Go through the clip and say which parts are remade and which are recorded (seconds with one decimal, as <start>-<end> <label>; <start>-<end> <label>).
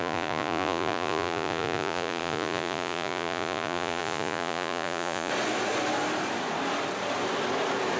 0.0-5.3 remade; 5.3-8.0 recorded